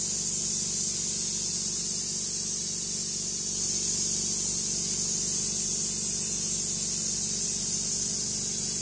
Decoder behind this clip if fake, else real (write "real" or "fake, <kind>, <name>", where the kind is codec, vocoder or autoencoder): real